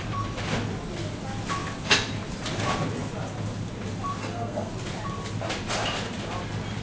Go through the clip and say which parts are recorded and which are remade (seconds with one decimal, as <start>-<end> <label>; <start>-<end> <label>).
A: 0.0-4.2 recorded; 4.2-4.7 remade; 4.7-6.8 recorded